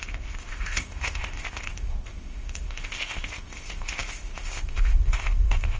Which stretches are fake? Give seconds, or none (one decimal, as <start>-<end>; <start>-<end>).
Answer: 0.0-5.8